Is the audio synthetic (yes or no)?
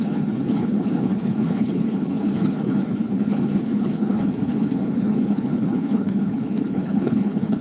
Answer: yes